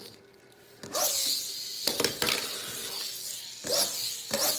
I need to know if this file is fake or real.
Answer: real